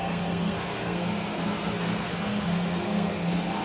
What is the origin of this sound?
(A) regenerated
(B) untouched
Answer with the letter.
A